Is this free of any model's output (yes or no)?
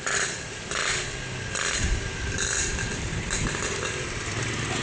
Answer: yes